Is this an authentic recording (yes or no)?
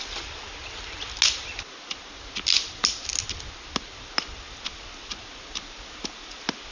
yes